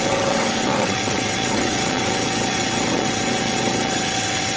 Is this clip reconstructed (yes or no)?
yes